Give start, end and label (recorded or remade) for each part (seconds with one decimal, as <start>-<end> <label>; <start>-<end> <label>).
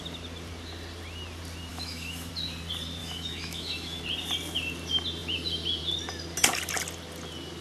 0.0-1.7 recorded; 1.7-2.3 remade; 2.3-3.0 recorded; 3.0-4.0 remade; 4.0-7.6 recorded